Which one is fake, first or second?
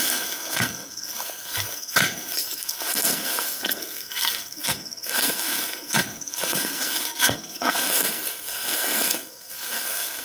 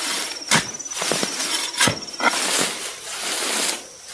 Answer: first